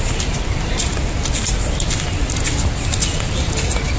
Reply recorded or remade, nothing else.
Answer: recorded